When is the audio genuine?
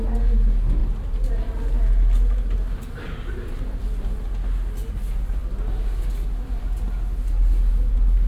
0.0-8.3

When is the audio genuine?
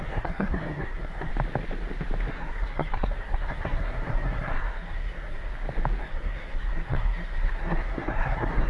1.3-2.3; 5.5-6.0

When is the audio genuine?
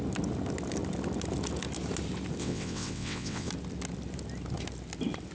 0.0-2.4; 3.5-5.3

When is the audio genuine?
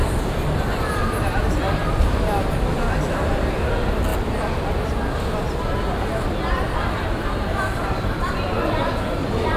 4.1-6.6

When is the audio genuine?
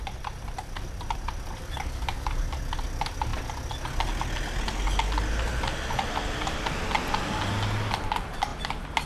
0.0-1.6; 2.6-9.1